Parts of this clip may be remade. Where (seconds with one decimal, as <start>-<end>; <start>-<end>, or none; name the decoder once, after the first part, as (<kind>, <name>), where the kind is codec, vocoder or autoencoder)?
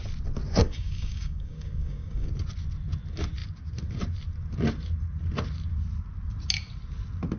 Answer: 0.6-2.3 (codec, DAC)